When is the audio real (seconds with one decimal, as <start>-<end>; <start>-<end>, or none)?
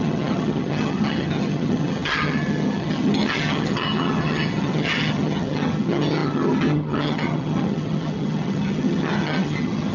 none